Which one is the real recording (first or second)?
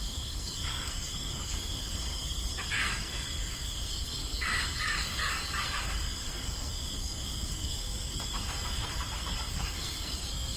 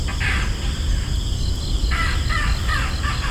second